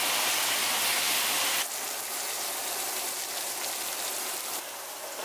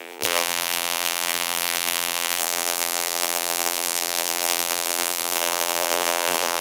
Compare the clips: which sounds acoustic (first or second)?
first